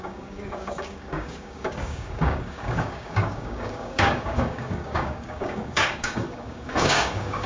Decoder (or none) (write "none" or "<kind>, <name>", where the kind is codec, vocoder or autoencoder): codec, DAC